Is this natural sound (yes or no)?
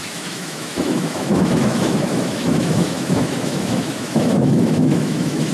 no